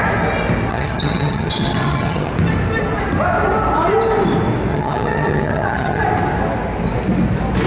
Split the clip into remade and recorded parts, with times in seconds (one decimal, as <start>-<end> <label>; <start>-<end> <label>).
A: 0.0-0.7 recorded; 0.7-2.3 remade; 2.3-4.7 recorded; 4.7-6.0 remade; 6.0-7.7 recorded